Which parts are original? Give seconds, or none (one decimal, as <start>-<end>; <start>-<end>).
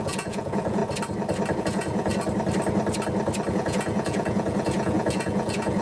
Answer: 0.8-1.6; 2.1-3.5